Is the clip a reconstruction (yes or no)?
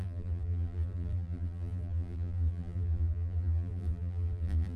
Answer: yes